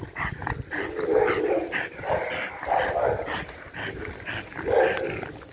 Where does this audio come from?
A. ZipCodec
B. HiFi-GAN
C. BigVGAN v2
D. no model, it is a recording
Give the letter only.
D